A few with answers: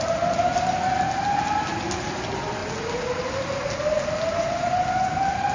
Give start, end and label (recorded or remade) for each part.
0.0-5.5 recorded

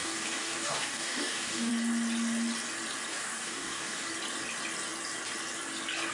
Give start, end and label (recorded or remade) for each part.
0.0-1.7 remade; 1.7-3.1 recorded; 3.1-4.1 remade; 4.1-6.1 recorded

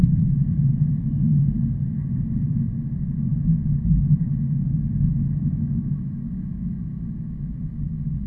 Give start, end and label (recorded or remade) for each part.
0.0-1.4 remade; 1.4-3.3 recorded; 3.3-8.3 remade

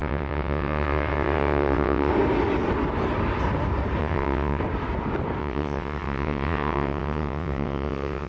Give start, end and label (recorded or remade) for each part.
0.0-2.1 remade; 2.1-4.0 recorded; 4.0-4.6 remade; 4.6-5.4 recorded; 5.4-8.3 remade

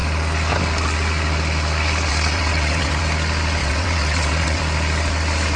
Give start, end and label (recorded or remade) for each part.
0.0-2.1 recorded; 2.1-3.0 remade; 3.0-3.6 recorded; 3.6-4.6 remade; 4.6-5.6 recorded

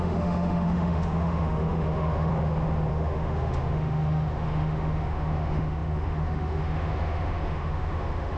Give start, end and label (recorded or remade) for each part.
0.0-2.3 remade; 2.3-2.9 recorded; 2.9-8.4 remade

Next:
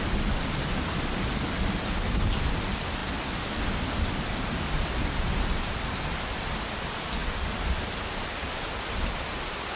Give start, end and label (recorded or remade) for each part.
0.0-9.8 recorded